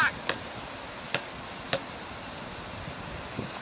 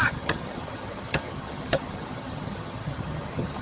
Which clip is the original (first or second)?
first